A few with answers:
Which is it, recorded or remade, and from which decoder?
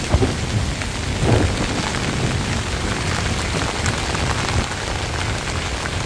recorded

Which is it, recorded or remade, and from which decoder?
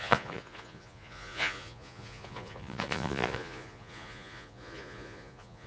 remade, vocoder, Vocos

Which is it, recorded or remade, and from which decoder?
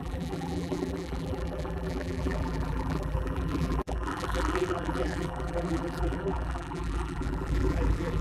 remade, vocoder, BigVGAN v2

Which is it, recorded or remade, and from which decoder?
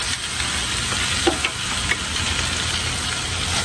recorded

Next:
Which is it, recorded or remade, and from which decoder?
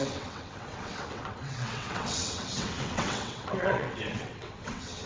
remade, vocoder, WaveNeXt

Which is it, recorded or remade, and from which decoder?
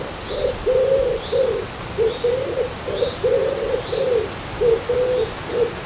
recorded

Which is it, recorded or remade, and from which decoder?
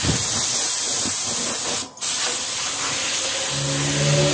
recorded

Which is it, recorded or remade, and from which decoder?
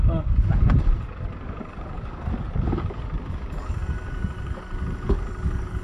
remade, codec, DAC